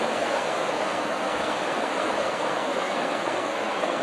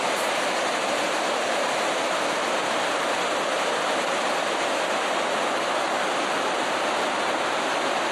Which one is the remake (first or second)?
first